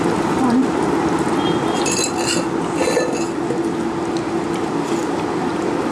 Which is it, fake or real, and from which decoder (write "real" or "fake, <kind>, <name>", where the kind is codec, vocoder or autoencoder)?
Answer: real